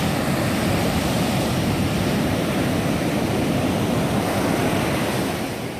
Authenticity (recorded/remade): recorded